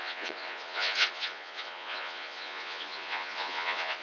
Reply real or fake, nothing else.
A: fake